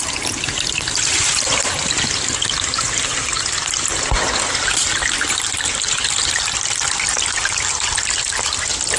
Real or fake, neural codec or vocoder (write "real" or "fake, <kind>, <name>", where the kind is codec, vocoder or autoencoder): real